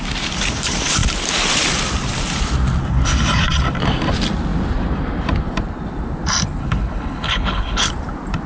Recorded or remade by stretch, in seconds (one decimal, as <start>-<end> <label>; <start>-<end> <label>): 0.0-6.6 recorded; 6.6-7.9 remade; 7.9-8.5 recorded

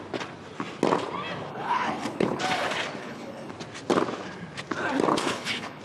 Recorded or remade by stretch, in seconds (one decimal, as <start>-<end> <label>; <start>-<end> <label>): 0.0-1.5 recorded; 1.5-2.4 remade; 2.4-3.0 recorded; 3.0-3.5 remade; 3.5-5.1 recorded; 5.1-5.8 remade

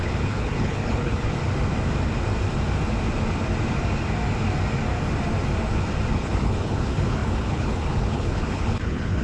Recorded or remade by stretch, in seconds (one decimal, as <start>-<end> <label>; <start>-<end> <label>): 0.0-1.4 remade; 1.4-6.1 recorded; 6.1-9.2 remade